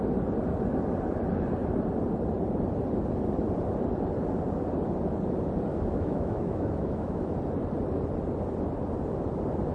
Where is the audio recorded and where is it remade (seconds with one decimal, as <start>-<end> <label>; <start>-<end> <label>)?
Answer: 0.0-5.7 recorded; 5.7-7.3 remade; 7.3-9.7 recorded